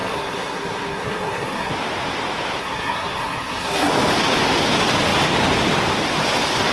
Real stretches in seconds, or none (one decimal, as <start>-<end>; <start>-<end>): 1.7-2.6; 3.9-6.7